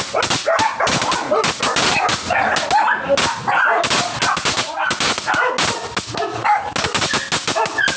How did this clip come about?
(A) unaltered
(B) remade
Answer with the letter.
A